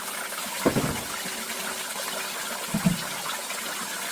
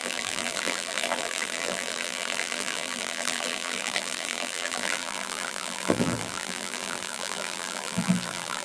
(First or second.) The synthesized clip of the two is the second